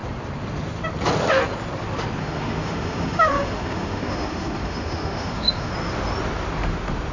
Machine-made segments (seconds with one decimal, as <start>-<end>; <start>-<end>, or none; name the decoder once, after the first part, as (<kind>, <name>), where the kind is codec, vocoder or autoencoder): 2.2-5.7 (autoencoder, DAC-VAE)